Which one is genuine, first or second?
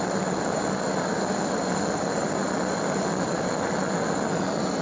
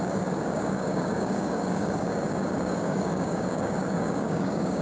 first